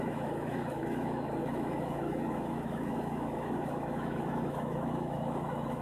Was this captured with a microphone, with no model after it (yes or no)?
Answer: no